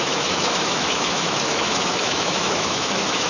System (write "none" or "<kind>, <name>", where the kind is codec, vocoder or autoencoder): autoencoder, DAC-VAE